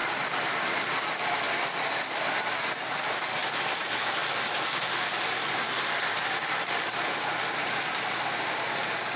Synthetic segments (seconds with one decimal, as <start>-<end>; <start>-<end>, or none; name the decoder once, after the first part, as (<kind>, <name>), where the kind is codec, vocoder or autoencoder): 0.0-0.6 (vocoder, BigVGAN v2); 3.4-7.2